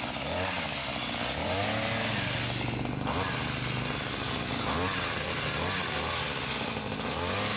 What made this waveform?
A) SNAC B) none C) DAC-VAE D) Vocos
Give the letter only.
B